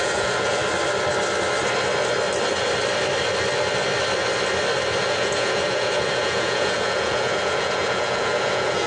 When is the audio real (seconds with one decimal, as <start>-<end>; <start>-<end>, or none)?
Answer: 0.6-5.0